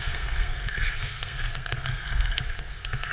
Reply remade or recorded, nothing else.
remade